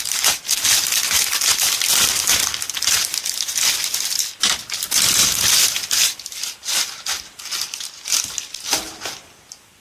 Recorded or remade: recorded